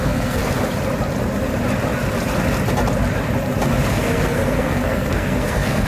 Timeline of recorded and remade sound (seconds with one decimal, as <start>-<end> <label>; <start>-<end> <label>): 0.0-0.4 remade; 0.4-3.9 recorded; 3.9-5.9 remade